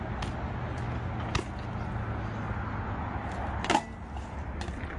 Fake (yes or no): no